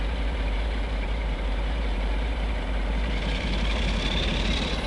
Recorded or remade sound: remade